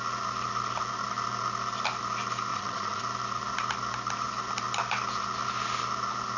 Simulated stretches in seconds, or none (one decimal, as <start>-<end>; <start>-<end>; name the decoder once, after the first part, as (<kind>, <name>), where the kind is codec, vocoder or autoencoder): 2.5-3.0 (vocoder, Vocos)

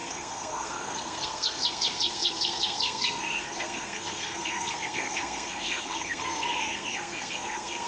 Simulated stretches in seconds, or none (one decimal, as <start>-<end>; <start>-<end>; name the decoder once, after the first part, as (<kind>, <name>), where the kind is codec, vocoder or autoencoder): 0.0-7.9 (codec, SNAC)

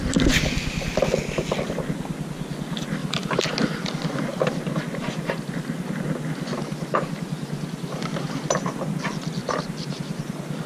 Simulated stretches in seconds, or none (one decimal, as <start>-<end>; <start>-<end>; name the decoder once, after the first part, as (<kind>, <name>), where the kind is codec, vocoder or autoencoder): 3.0-3.5 (vocoder, BigVGAN v2); 9.4-10.2

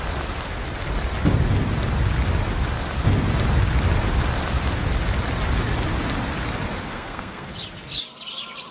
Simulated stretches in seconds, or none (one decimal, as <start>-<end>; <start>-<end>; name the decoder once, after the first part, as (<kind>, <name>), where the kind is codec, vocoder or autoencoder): 6.9-7.5 (codec, SNAC)